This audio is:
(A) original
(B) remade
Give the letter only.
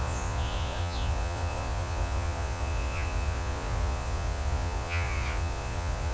B